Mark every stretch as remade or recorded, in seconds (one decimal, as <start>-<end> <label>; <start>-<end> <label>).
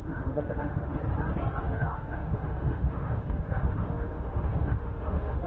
0.0-1.0 remade; 1.0-1.6 recorded; 1.6-5.5 remade